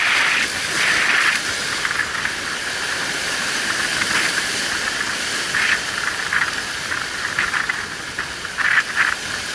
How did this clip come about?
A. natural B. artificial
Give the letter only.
B